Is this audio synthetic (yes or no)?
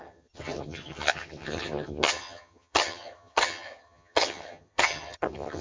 yes